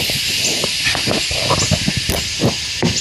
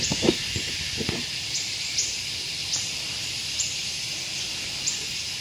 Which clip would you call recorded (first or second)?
first